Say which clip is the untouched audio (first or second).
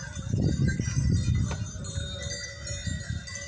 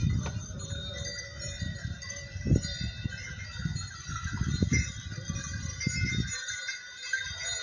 first